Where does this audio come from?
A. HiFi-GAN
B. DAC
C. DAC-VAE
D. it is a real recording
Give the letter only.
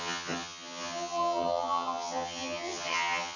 A